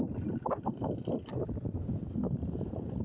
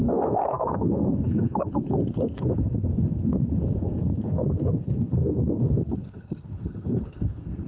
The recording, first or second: first